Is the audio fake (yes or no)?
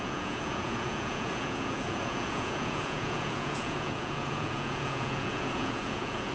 yes